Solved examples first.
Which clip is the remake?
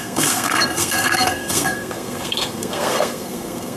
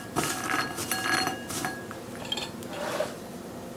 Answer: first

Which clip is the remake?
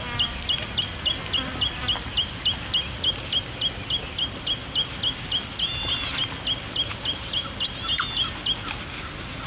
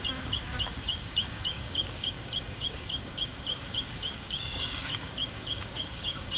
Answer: second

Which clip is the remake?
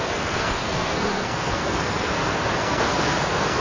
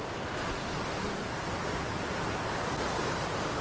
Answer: first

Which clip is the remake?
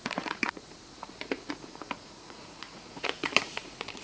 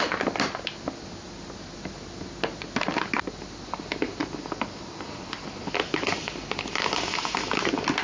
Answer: first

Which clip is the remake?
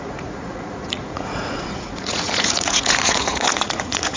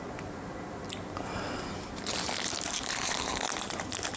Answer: first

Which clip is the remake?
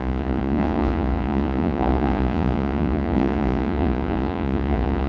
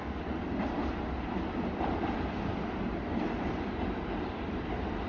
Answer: first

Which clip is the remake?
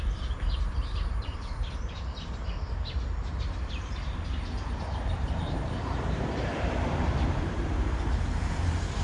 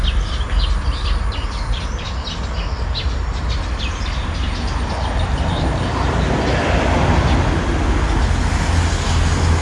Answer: first